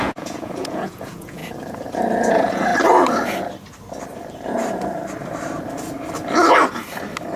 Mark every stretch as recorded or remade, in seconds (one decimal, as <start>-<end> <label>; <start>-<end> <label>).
0.0-1.4 remade; 1.4-2.3 recorded; 2.3-2.7 remade; 2.7-7.4 recorded